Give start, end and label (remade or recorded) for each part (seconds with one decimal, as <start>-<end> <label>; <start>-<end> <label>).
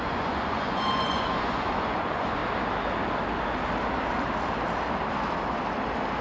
0.0-2.4 remade; 2.4-6.2 recorded